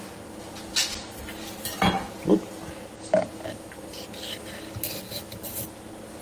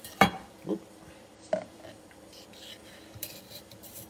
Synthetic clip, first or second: second